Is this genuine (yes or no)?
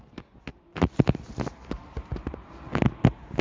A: yes